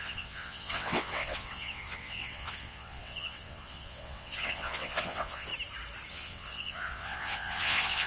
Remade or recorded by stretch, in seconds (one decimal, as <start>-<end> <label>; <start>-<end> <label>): 0.0-5.5 remade; 5.5-6.1 recorded; 6.1-8.1 remade